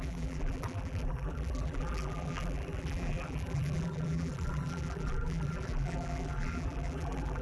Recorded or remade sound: remade